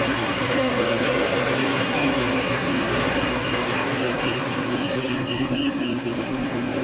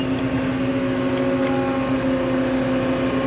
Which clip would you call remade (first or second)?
first